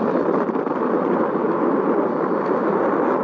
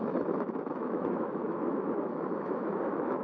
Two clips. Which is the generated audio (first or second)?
second